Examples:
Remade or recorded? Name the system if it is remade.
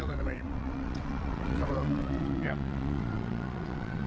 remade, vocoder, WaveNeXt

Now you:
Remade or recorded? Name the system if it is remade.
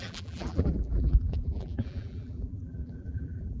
remade, vocoder, BigVGAN v2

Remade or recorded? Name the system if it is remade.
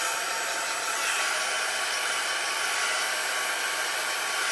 recorded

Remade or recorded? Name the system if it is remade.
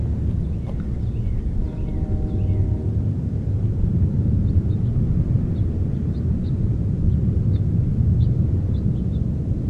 recorded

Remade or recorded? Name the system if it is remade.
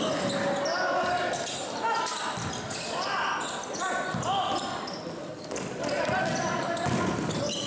recorded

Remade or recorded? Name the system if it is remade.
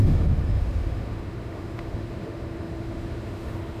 remade, autoencoder, DAC-VAE